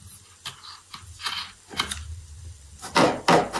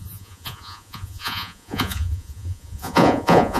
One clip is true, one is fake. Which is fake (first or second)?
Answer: second